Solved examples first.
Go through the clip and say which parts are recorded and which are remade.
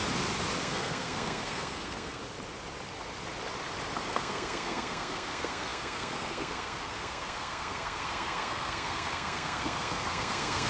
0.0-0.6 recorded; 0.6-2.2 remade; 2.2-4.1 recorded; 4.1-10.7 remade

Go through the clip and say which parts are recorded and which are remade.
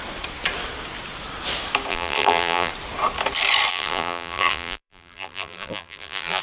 0.0-1.9 recorded; 1.9-2.7 remade; 2.7-3.7 recorded; 3.7-6.4 remade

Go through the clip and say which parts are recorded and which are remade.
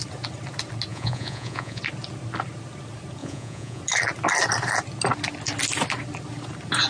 0.0-0.9 recorded; 0.9-1.8 remade; 1.8-3.2 recorded; 3.2-3.8 remade; 3.8-6.9 recorded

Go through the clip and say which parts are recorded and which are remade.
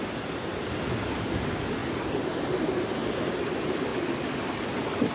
0.0-5.1 recorded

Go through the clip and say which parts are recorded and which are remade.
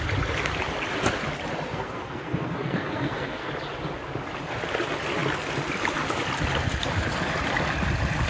0.0-1.7 recorded; 1.7-3.5 remade; 3.5-8.3 recorded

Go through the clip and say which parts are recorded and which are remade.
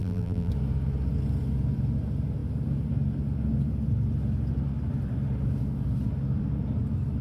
0.0-0.5 remade; 0.5-7.2 recorded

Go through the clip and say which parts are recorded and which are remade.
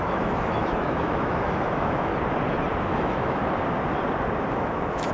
0.0-2.1 remade; 2.1-2.8 recorded; 2.8-3.4 remade; 3.4-4.5 recorded; 4.5-5.1 remade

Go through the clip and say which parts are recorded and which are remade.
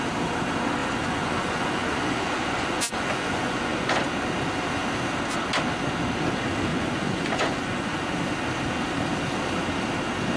0.0-0.8 recorded; 0.8-4.0 remade; 4.0-6.7 recorded; 6.7-8.0 remade; 8.0-10.4 recorded